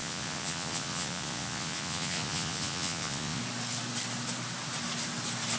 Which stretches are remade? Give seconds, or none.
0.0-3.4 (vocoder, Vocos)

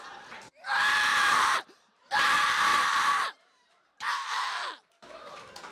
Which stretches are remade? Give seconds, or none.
1.1-2.3 (vocoder, BigVGAN v2); 2.7-4.3

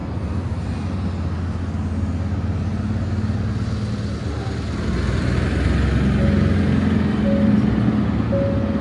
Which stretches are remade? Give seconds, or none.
none

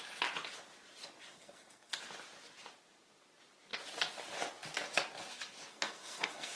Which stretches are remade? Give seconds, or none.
1.3-2.0 (codec, SNAC); 5.7-6.6

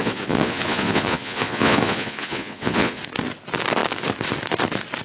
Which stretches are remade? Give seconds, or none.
0.0-3.0 (vocoder, Vocos)

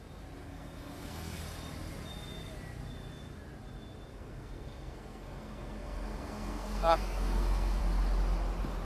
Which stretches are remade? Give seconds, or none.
0.4-1.4 (codec, SNAC); 4.1-7.8